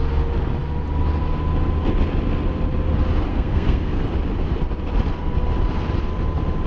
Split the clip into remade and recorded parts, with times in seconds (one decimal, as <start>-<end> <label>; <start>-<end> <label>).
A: 0.0-3.3 recorded; 3.3-4.0 remade; 4.0-6.7 recorded